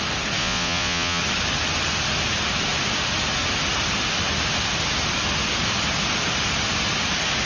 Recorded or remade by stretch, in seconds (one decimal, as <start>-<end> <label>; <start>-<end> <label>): 0.0-0.4 recorded; 0.4-1.2 remade; 1.2-7.5 recorded